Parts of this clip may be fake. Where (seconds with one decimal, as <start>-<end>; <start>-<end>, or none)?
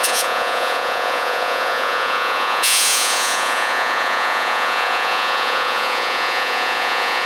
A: 0.0-7.3